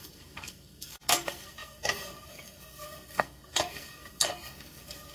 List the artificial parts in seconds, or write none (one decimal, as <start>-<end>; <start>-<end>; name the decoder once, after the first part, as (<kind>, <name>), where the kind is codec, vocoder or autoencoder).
0.0-5.1 (codec, SNAC)